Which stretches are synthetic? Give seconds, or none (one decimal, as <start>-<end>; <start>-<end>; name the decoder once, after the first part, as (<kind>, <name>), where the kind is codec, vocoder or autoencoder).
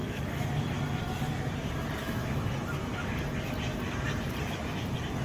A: 0.0-0.7 (autoencoder, DAC-VAE); 2.0-2.5